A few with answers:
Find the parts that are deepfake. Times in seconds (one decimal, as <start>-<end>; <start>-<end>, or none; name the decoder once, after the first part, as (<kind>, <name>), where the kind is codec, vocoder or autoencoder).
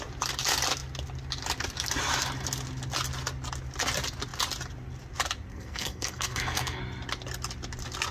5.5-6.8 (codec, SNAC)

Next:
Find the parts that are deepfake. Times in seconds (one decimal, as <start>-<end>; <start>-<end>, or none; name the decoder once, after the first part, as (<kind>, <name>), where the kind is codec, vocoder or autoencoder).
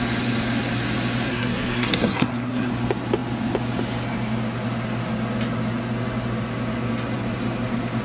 1.3-2.7 (codec, SNAC)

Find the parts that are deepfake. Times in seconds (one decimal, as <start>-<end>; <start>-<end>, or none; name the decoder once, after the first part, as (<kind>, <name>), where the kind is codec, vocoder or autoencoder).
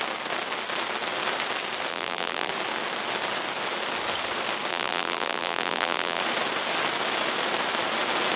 1.9-2.5 (vocoder, BigVGAN v2); 4.7-6.2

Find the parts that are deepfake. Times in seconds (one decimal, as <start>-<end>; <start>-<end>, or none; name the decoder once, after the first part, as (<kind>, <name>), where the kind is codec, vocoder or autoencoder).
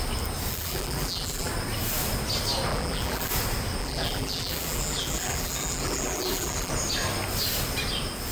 0.5-1.5 (vocoder, BigVGAN v2); 2.7-3.3; 3.8-6.7